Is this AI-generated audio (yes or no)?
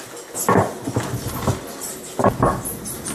no